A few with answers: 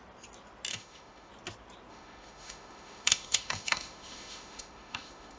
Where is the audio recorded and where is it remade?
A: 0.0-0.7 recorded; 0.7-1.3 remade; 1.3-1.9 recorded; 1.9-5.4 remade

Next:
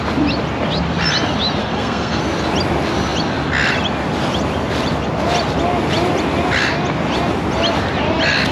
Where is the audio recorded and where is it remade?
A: 0.0-1.6 recorded; 1.6-2.2 remade; 2.2-8.5 recorded

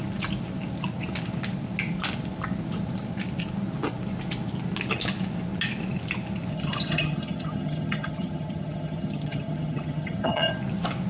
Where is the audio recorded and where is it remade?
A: 0.0-6.5 recorded; 6.5-10.5 remade; 10.5-11.1 recorded

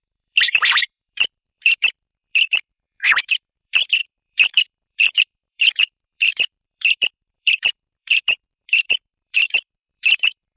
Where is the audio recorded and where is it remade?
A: 0.0-10.6 remade

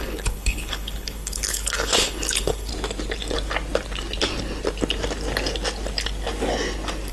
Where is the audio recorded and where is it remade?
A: 0.0-2.7 remade; 2.7-7.1 recorded

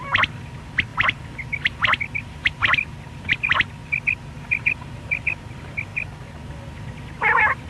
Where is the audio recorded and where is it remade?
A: 0.0-0.9 recorded; 0.9-2.4 remade; 2.4-5.9 recorded; 5.9-6.5 remade; 6.5-7.7 recorded

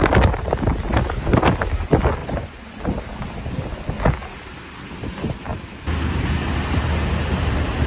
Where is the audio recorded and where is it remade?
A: 0.0-2.2 recorded; 2.2-2.8 remade; 2.8-7.9 recorded